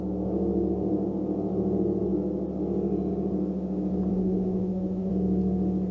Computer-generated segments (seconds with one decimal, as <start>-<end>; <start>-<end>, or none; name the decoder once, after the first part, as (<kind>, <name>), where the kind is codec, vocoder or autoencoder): 4.1-5.1 (autoencoder, DAC-VAE)